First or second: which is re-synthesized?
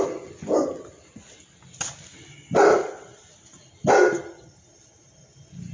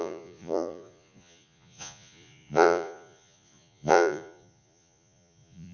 second